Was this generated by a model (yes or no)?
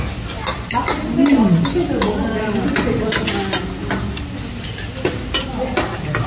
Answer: no